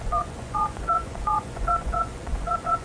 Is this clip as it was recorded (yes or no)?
no